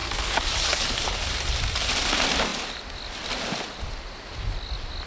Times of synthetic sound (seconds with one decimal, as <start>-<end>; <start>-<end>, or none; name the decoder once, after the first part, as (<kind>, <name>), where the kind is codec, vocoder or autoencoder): 0.0-1.3 (codec, DAC)